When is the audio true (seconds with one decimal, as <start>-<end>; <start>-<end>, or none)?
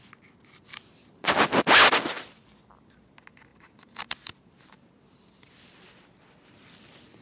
0.0-0.7; 1.7-3.5; 5.5-7.2